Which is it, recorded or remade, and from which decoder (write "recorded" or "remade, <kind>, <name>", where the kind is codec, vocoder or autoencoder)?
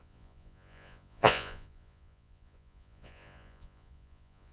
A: remade, vocoder, Vocos